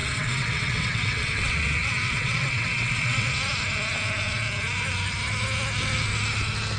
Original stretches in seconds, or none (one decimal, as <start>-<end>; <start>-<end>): 3.3-6.8